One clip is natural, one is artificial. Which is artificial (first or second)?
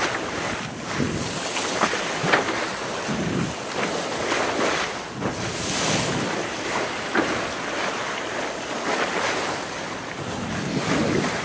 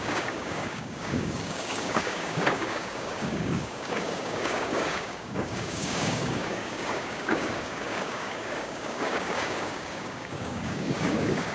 second